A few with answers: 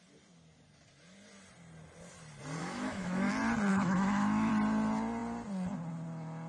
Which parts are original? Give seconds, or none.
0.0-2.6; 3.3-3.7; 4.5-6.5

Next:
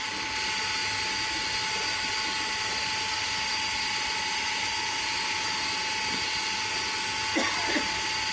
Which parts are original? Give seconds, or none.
0.0-8.3